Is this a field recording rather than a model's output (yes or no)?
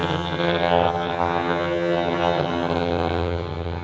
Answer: no